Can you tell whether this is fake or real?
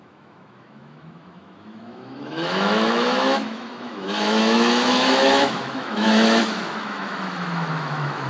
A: fake